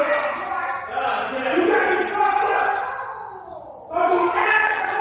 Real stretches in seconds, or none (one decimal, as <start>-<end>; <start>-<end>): 0.0-4.4